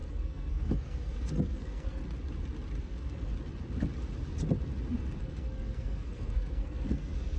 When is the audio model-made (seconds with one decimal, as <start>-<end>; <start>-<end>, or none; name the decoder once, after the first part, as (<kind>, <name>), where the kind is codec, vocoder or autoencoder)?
0.0-2.0 (codec, SNAC); 2.8-3.3; 5.2-7.4